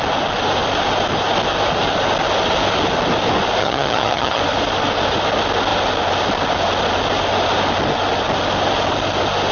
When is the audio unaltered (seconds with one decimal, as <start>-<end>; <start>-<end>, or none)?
0.0-3.6; 4.4-9.5